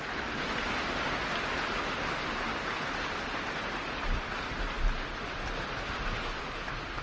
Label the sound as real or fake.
real